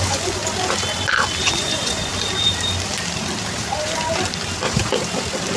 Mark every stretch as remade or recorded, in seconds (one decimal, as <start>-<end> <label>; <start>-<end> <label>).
0.0-0.4 remade; 0.4-1.4 recorded; 1.4-2.1 remade; 2.1-5.6 recorded